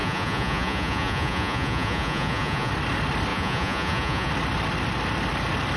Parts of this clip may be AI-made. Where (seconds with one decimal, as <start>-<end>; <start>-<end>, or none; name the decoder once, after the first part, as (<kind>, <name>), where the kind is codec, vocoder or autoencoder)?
0.0-2.7 (vocoder, Vocos); 3.3-4.3